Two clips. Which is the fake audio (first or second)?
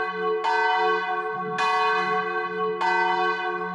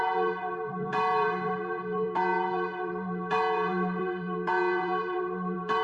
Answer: second